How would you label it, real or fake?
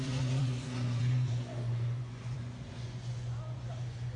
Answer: fake